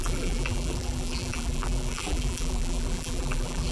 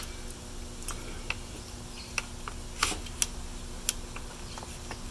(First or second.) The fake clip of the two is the first